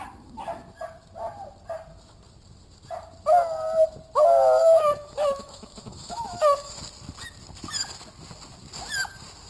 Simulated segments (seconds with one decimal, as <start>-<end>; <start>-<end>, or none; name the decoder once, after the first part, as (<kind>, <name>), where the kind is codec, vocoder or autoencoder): 4.6-6.8 (autoencoder, DAC-VAE)